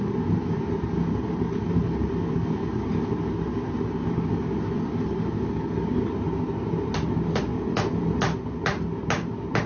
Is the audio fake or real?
real